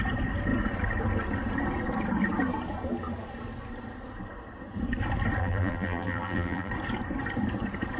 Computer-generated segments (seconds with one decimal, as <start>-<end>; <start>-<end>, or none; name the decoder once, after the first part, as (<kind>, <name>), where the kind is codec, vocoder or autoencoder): 5.4-6.7 (vocoder, BigVGAN v2)